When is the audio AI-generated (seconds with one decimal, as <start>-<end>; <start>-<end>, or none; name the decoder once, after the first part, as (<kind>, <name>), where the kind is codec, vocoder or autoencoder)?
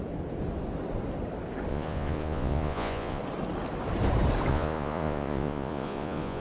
1.7-3.2 (vocoder, Vocos); 4.5-6.4